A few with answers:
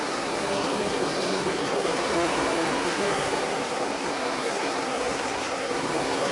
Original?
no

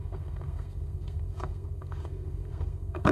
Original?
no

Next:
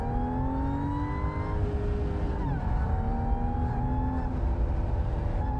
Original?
yes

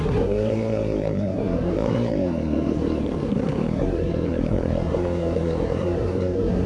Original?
no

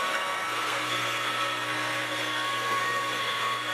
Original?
no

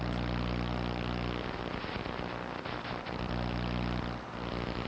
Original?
yes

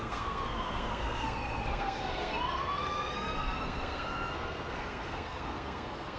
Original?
no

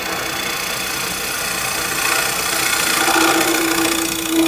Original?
yes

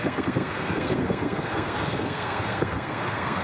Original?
no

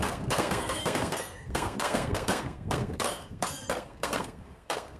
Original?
no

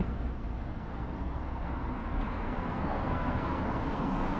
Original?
no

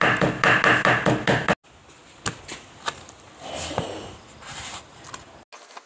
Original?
yes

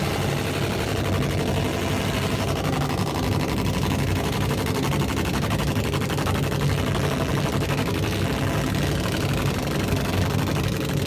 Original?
yes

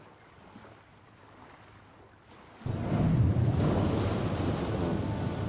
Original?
yes